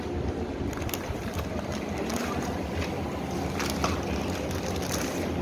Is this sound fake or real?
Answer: real